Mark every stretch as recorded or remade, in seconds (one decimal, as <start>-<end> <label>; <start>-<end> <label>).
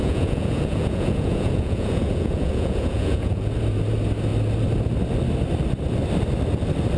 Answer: 0.0-3.5 remade; 3.5-7.0 recorded